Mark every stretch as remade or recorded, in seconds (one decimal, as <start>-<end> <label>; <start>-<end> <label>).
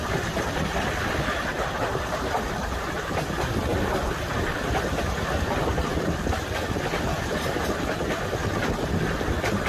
0.0-9.7 recorded